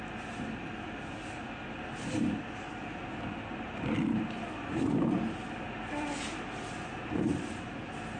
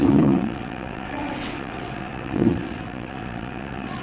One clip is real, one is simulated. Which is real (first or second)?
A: first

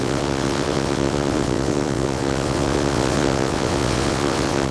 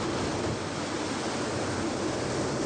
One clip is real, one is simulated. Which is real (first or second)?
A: second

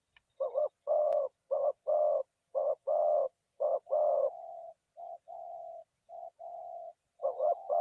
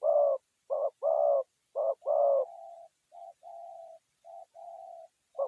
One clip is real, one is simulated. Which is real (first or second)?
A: second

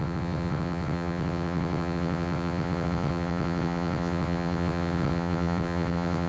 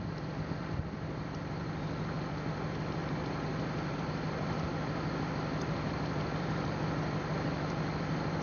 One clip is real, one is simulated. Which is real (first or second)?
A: second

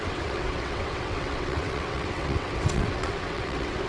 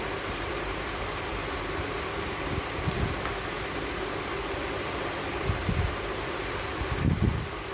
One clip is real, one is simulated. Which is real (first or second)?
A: second